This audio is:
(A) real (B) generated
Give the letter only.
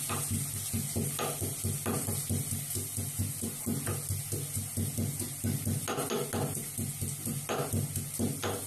A